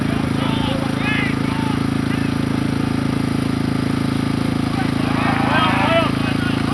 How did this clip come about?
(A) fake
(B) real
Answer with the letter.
B